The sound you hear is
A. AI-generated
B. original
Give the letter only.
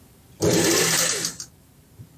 B